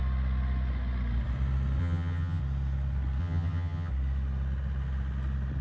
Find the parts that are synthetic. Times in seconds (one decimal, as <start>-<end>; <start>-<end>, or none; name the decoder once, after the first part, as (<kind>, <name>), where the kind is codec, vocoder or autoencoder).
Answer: 1.8-2.4 (vocoder, HiFi-GAN); 3.2-3.9